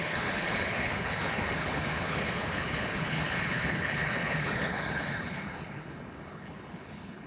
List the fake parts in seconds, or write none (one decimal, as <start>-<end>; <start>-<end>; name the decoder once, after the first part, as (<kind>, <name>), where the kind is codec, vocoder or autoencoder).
0.0-7.3 (codec, HILCodec)